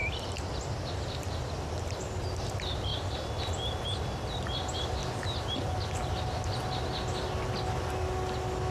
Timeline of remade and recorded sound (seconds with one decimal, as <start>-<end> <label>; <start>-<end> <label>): 0.0-8.7 recorded